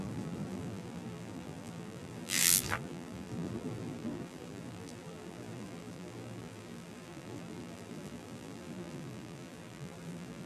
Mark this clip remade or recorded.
remade